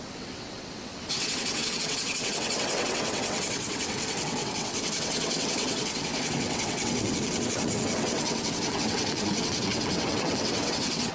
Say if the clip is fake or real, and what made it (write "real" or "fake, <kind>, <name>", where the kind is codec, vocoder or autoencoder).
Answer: fake, vocoder, WaveNeXt